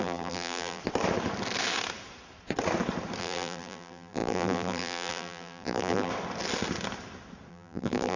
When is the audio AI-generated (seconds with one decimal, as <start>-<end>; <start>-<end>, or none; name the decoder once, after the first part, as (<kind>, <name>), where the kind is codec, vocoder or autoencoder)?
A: 0.0-0.8 (vocoder, BigVGAN v2); 3.2-6.1; 7.5-8.2